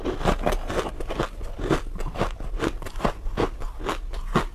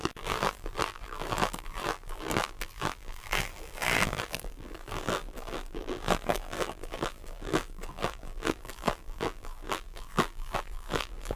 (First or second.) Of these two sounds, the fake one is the second